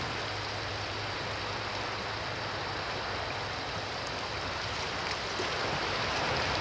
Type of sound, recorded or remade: recorded